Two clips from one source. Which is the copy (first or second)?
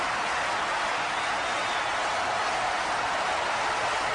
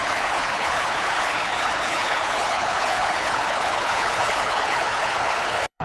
second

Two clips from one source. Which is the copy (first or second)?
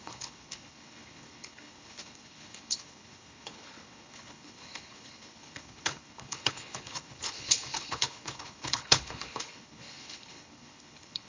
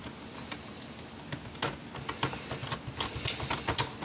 first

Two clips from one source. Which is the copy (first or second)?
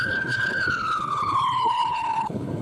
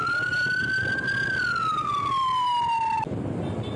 first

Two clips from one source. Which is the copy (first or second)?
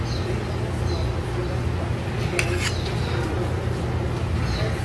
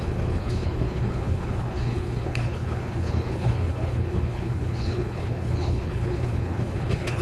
second